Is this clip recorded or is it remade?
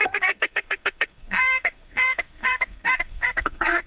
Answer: remade